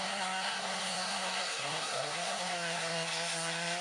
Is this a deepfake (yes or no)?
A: yes